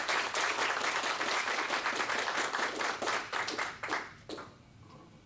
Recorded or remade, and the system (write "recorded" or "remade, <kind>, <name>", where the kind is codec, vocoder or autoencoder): recorded